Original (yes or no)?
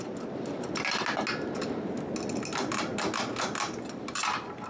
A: yes